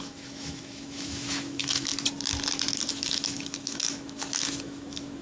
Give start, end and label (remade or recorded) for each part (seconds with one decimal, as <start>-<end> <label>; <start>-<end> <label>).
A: 0.0-1.9 remade; 1.9-2.9 recorded; 2.9-5.2 remade